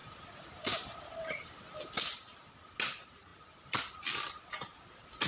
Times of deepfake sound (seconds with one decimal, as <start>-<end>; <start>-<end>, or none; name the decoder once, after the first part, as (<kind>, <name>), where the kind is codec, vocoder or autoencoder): none